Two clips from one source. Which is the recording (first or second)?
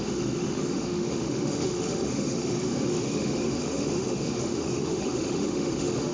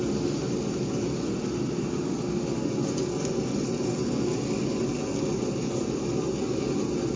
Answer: second